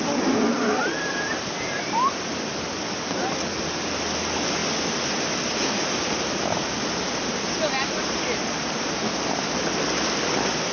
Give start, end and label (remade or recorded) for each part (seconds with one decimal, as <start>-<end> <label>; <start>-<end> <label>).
0.0-10.7 recorded